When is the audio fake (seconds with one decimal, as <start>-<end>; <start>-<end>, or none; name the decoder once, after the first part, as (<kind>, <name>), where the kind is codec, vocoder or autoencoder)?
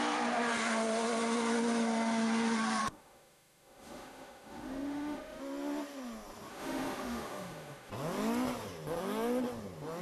2.8-5.4 (autoencoder, DAC-VAE); 6.5-7.9